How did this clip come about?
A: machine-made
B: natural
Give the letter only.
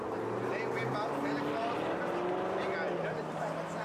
B